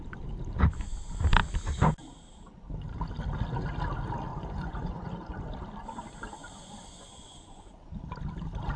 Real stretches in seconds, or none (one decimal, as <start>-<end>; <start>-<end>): 0.0-4.3; 5.1-6.4; 7.9-8.8